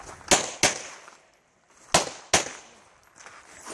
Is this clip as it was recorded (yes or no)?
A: yes